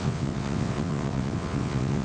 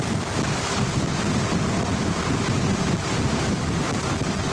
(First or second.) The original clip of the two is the second